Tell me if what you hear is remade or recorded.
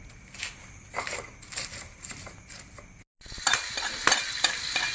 recorded